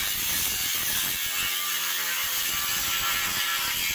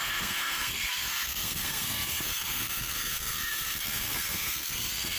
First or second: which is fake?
second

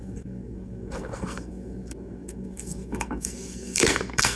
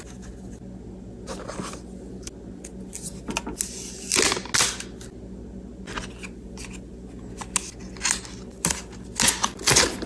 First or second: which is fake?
first